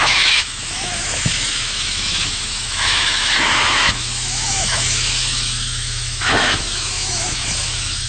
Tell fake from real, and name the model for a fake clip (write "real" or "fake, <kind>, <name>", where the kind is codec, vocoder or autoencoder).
fake, autoencoder, DAC-VAE